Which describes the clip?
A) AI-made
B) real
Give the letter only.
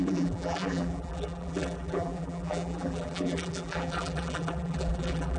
A